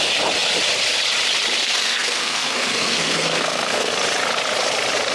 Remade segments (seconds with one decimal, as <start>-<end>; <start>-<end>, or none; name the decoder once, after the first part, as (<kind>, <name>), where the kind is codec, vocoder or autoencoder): 1.6-3.9 (codec, SNAC)